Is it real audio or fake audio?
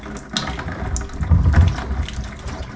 real